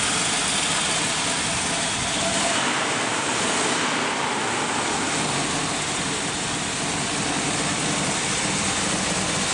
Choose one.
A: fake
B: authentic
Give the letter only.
B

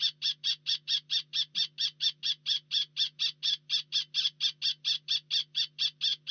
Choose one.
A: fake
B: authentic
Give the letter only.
B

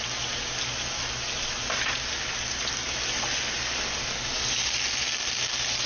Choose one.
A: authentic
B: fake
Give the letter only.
A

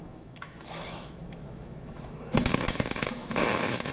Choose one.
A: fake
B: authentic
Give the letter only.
A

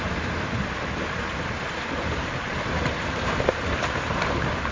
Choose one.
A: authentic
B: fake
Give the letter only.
B